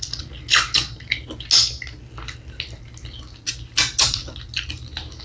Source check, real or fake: real